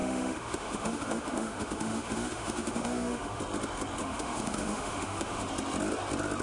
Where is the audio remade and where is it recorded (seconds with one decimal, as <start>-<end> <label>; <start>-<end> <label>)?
0.0-3.4 remade; 3.4-4.0 recorded; 4.0-5.5 remade; 5.5-6.4 recorded